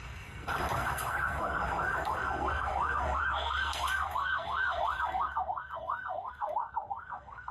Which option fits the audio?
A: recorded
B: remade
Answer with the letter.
B